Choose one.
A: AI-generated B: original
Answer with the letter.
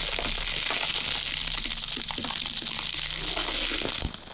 B